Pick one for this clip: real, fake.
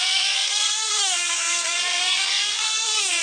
fake